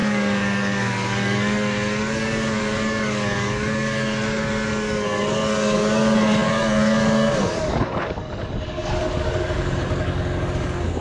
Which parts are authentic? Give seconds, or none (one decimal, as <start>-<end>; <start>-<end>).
none